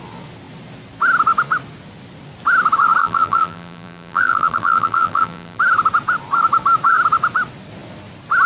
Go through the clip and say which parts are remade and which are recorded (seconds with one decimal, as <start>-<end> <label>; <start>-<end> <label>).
0.0-3.0 recorded; 3.0-5.6 remade; 5.6-8.5 recorded